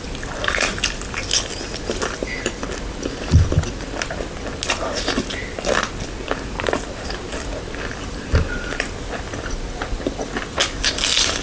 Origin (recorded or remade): recorded